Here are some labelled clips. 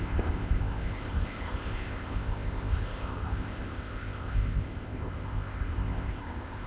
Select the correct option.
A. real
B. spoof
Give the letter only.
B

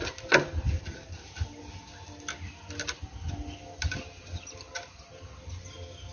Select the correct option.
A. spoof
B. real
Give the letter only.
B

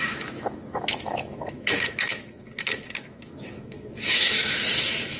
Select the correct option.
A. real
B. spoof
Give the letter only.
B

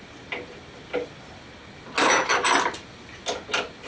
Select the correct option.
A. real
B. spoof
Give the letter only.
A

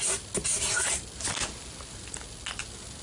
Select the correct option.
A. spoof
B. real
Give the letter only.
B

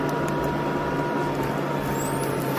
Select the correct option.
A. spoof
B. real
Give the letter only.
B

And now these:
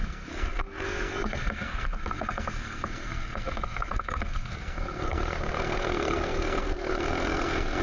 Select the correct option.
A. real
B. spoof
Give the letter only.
B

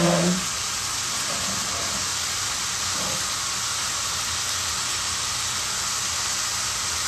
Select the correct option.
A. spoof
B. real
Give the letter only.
A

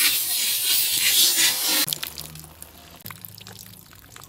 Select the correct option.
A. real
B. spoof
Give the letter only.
A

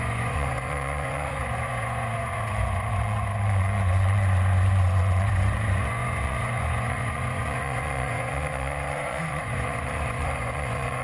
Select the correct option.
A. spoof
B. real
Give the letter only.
A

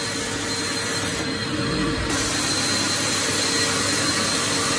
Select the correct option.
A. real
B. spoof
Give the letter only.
A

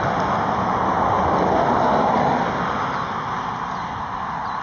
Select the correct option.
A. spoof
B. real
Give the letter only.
B